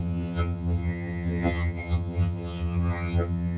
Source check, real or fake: fake